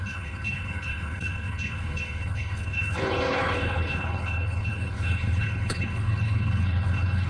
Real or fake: fake